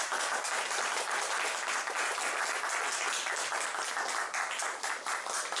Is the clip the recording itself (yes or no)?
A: yes